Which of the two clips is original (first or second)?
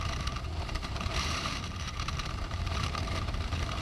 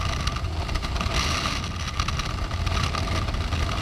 second